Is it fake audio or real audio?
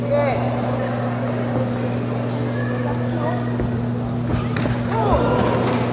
real